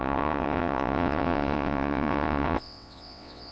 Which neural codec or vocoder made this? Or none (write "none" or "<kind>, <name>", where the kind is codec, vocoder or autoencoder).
vocoder, WaveNeXt